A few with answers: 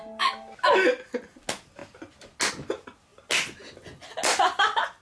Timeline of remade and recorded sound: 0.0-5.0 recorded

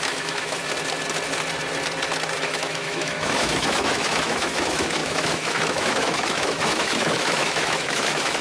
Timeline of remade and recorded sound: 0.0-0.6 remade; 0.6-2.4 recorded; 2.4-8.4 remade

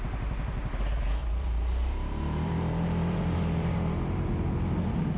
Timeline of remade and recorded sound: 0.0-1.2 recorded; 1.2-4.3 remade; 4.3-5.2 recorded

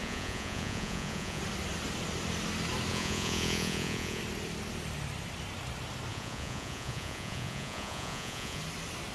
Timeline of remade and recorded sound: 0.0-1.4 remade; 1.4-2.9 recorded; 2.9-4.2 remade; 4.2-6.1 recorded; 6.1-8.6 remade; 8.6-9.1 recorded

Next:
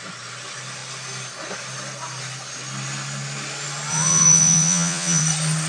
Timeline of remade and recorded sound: 0.0-3.9 recorded; 3.9-5.2 remade; 5.2-5.7 recorded